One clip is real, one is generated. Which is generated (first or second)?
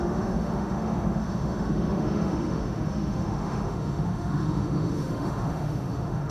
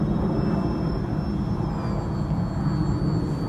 first